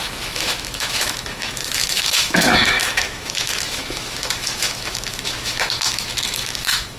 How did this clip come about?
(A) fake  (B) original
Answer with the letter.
A